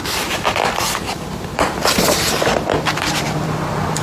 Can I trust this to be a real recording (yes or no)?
no